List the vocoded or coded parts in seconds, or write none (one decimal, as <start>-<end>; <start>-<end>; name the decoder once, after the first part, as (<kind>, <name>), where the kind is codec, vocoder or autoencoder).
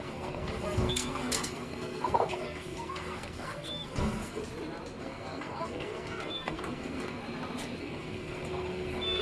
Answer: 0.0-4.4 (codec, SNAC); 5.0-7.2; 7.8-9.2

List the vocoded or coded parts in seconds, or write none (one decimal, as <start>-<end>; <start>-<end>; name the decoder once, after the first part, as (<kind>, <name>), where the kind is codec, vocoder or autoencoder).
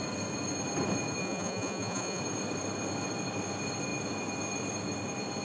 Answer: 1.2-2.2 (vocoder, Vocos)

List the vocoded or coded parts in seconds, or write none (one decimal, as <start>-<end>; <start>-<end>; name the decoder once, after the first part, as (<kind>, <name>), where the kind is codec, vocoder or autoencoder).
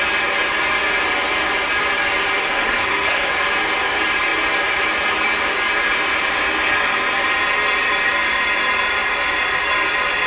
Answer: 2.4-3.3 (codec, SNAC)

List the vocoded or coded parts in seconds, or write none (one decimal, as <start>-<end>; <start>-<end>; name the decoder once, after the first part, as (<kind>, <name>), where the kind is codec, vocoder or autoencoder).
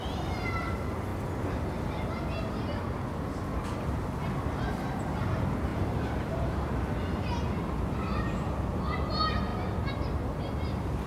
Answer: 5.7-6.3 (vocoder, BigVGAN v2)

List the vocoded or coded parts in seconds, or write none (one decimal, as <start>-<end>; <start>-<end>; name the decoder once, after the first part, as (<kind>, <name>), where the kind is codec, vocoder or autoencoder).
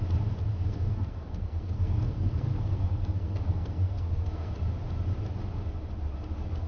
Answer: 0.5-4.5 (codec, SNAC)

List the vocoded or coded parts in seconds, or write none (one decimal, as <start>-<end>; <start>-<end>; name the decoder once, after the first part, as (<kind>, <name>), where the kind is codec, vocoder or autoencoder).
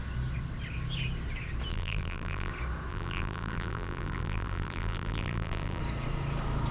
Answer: 1.7-2.5 (vocoder, BigVGAN v2); 2.9-5.8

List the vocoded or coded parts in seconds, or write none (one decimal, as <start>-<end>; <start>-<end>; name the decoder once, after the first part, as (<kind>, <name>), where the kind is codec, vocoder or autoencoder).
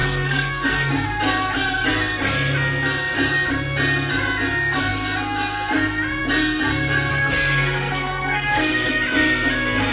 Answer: 0.0-0.9 (codec, SNAC); 7.1-8.9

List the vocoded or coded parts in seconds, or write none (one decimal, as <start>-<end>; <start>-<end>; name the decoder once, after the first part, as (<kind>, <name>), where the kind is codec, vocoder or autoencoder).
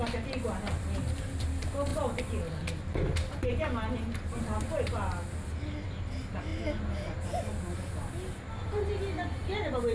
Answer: none